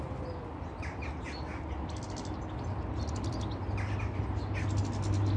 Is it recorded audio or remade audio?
recorded